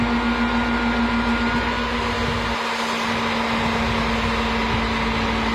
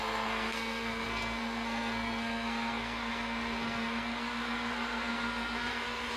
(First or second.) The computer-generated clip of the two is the second